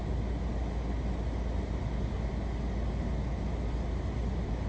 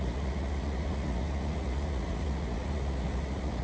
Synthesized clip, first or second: second